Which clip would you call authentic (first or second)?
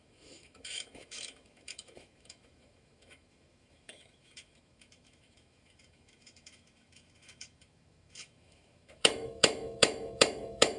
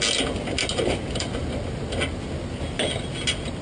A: second